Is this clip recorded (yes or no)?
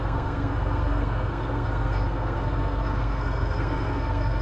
no